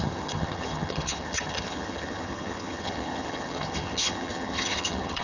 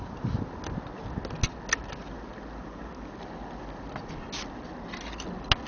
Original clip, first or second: second